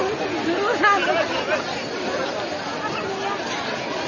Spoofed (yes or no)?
no